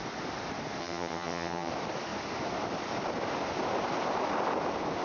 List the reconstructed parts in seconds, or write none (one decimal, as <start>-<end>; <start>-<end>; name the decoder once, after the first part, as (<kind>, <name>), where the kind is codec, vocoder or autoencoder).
0.8-1.7 (vocoder, HiFi-GAN)